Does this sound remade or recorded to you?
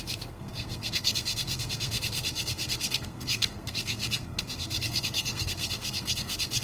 remade